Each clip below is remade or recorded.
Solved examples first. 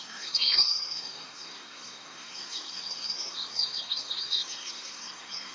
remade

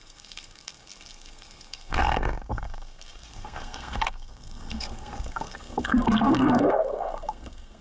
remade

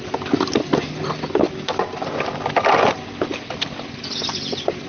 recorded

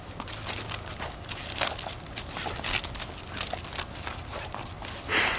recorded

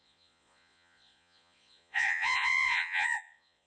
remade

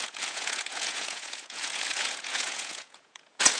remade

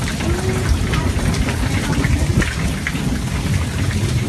recorded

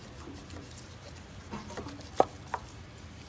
recorded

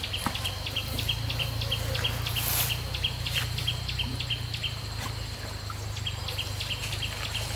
recorded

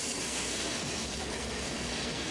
remade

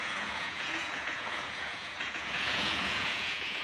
remade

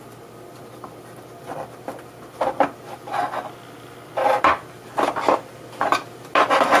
recorded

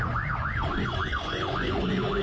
remade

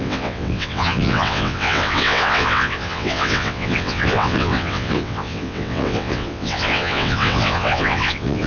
remade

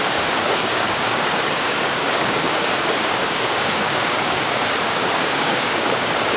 remade